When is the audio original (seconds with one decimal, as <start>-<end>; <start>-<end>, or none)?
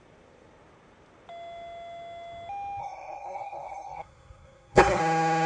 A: 0.0-2.8; 5.0-5.5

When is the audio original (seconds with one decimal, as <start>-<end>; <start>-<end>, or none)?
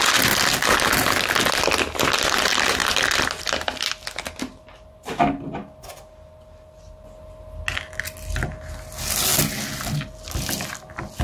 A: 0.0-11.2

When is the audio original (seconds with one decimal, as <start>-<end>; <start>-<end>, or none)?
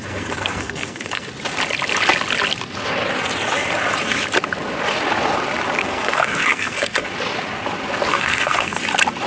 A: 1.3-5.8; 7.1-8.1; 8.8-9.3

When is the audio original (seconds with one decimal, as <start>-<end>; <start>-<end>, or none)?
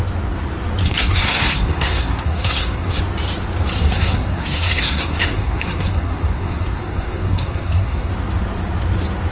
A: 0.0-0.8; 3.0-3.8; 8.1-9.3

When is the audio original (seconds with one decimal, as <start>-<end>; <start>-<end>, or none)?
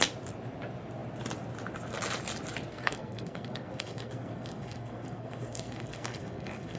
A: 0.0-2.7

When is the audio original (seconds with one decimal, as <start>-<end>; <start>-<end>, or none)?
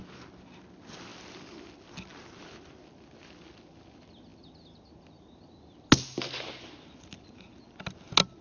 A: 0.0-8.4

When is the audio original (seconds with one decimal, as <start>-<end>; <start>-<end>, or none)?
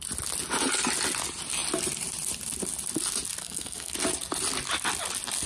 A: 0.0-3.4; 3.9-5.5